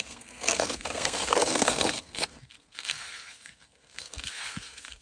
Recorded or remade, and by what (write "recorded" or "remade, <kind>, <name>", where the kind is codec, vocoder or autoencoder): remade, codec, SNAC